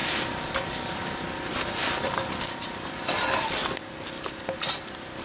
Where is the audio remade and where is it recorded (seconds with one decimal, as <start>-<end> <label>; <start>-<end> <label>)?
0.0-3.6 remade; 3.6-4.7 recorded; 4.7-5.2 remade